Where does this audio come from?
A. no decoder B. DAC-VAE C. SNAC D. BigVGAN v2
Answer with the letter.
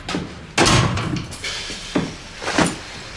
A